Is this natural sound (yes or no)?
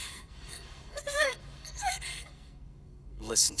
no